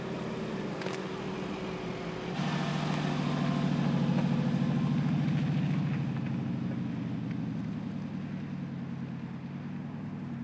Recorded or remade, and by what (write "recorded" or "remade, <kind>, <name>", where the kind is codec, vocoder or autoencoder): recorded